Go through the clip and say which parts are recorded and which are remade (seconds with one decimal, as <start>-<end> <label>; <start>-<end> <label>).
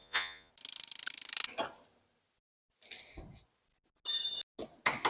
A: 0.0-0.5 remade; 0.5-5.1 recorded